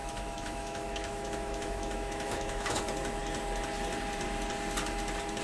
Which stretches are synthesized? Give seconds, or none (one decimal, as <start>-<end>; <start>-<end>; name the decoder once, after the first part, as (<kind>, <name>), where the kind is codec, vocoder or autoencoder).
0.0-2.8 (autoencoder, DAC-VAE)